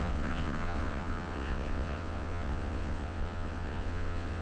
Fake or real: fake